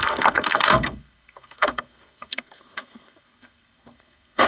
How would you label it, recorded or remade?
remade